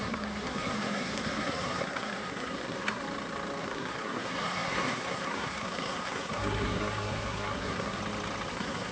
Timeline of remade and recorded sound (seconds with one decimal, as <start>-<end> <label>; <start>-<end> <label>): 0.0-3.0 remade; 3.0-3.6 recorded; 3.6-8.0 remade; 8.0-8.5 recorded; 8.5-8.9 remade